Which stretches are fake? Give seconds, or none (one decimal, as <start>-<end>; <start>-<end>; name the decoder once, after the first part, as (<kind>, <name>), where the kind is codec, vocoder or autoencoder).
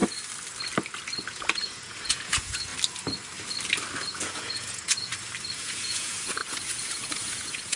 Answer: 1.3-2.7 (vocoder, Vocos); 4.0-5.1; 5.6-7.8